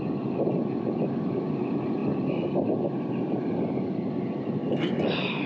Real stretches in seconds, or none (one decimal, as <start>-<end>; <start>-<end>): 0.0-5.5